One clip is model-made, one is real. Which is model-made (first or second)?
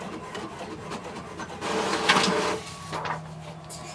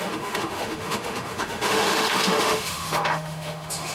second